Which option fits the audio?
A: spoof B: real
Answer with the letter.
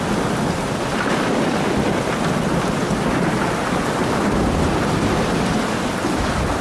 B